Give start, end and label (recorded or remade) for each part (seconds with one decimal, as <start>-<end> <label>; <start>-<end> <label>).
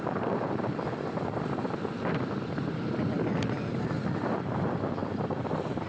0.0-5.9 recorded